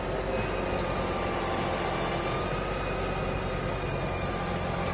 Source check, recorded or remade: recorded